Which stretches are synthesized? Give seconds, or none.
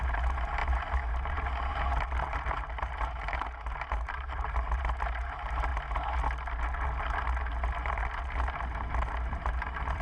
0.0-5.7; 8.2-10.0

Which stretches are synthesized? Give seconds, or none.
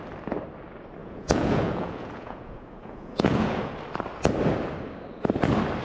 1.0-3.7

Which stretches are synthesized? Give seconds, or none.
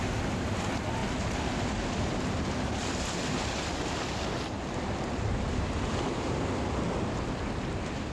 none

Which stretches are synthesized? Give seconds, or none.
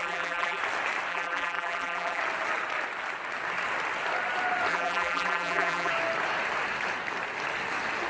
0.0-0.6; 1.1-2.2; 4.7-5.9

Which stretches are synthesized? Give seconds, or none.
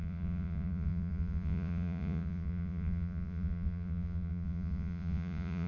0.0-5.7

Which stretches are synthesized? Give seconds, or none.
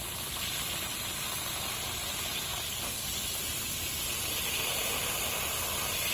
none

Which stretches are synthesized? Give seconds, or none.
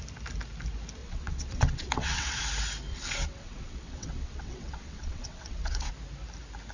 1.0-2.4; 2.9-5.9